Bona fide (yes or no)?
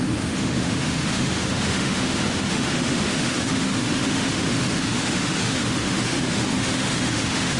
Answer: no